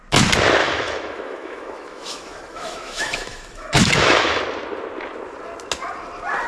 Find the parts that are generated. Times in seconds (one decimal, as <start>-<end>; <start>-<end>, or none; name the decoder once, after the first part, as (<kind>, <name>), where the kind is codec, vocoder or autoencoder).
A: 0.6-4.4 (autoencoder, DAC-VAE)